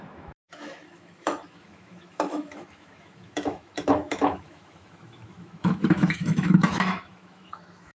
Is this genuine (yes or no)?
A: no